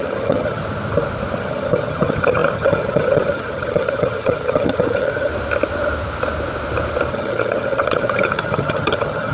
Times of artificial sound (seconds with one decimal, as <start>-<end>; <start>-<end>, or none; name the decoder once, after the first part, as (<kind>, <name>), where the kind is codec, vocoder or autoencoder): 0.0-0.6 (vocoder, HiFi-GAN); 1.4-5.3; 7.1-9.3